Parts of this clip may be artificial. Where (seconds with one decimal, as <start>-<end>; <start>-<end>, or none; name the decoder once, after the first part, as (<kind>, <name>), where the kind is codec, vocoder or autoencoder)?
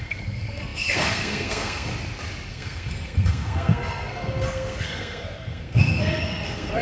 0.0-1.9 (codec, SNAC); 2.5-6.8